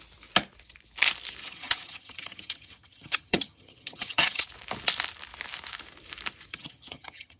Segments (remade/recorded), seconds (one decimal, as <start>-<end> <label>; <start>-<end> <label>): 0.0-1.4 recorded; 1.4-4.4 remade; 4.4-6.5 recorded; 6.5-7.4 remade

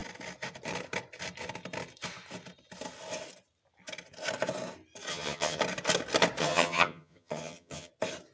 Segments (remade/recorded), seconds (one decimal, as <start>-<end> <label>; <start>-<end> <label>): 0.0-5.1 recorded; 5.1-5.6 remade; 5.6-6.4 recorded; 6.4-7.9 remade; 7.9-8.3 recorded